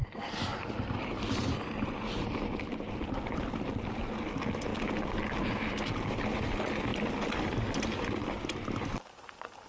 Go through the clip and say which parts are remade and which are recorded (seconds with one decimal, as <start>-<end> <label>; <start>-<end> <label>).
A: 0.0-9.7 recorded